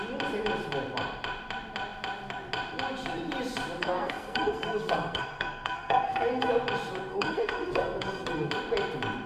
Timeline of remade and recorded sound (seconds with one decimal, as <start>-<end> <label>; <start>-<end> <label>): 0.0-3.8 recorded; 3.8-6.5 remade; 6.5-7.1 recorded; 7.1-8.5 remade; 8.5-9.3 recorded